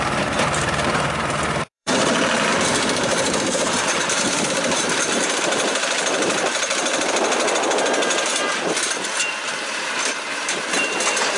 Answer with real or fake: fake